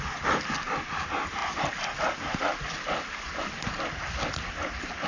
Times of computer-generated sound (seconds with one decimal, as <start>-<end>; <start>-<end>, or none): none

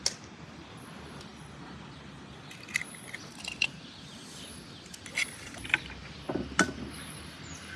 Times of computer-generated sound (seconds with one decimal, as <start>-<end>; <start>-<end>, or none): none

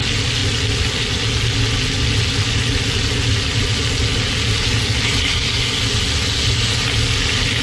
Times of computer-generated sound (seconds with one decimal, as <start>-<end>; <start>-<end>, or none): none

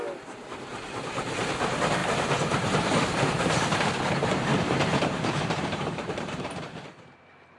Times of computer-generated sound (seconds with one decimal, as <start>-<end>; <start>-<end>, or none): 2.0-6.6

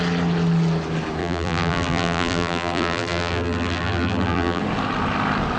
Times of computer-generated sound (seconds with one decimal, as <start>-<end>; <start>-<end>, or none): 1.2-4.6

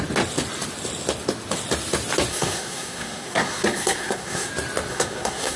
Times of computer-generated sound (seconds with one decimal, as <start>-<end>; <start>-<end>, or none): 2.3-4.5; 4.9-5.6

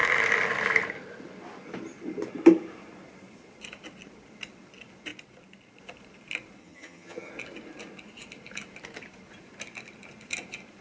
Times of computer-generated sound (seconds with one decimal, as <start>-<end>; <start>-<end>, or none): 6.6-7.3

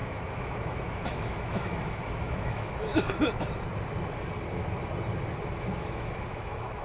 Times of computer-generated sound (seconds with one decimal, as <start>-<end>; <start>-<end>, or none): 0.0-2.9; 5.6-6.8